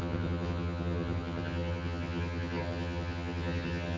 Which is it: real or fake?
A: fake